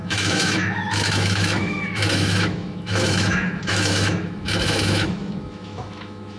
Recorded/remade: remade